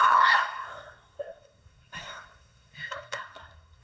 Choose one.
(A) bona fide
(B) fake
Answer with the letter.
B